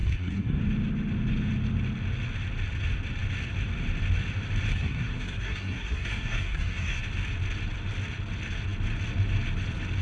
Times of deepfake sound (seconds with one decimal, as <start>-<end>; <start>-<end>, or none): 0.0-0.6; 4.7-7.0